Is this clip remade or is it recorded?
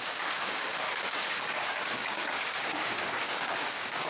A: remade